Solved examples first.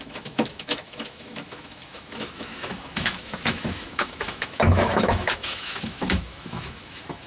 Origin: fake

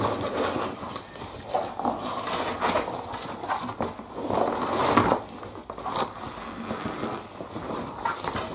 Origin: real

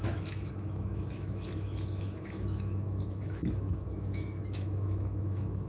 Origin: fake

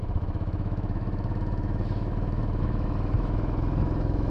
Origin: fake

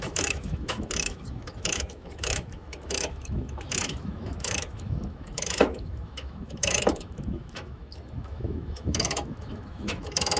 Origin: fake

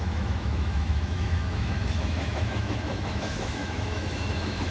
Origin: fake